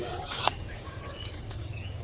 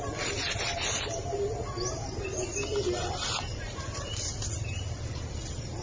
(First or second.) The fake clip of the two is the first